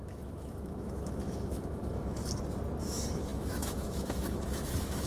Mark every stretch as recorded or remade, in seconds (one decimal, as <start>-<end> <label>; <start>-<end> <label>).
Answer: 0.0-2.2 remade; 2.2-2.8 recorded; 2.8-5.1 remade